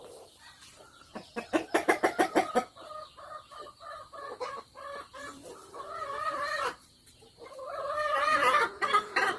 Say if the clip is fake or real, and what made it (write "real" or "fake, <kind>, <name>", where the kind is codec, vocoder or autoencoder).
fake, vocoder, BigVGAN v2